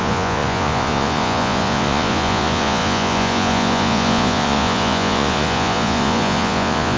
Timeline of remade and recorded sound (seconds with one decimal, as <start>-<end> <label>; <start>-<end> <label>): 0.0-7.0 remade